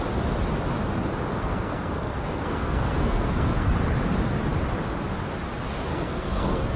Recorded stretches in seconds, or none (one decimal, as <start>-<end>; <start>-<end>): 0.0-1.3; 3.7-5.9